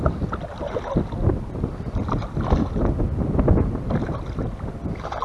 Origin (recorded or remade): recorded